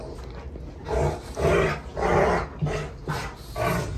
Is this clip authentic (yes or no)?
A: yes